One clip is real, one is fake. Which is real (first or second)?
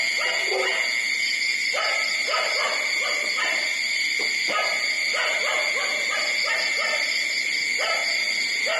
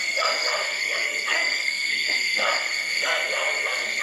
first